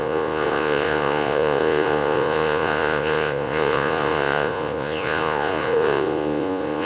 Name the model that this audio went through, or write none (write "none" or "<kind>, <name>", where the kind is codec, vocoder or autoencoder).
vocoder, Vocos